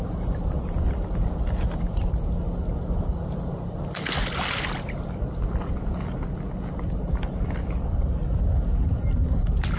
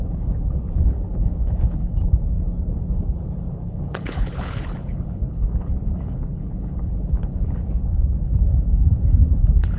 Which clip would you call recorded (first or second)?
first